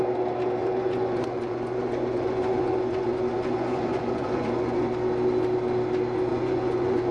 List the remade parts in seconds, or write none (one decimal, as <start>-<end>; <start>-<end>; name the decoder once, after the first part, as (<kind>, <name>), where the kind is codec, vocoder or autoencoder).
0.6-4.9 (vocoder, Vocos); 6.3-7.1